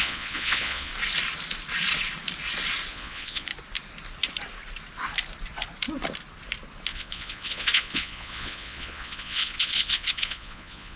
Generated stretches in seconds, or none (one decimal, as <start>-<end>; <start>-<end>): 0.0-0.9; 2.9-3.5; 6.9-11.0